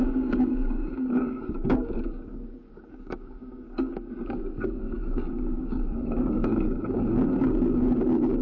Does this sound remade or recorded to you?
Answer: remade